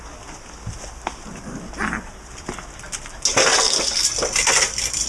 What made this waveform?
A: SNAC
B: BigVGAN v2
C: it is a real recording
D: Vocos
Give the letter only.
C